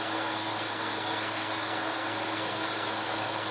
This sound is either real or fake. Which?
fake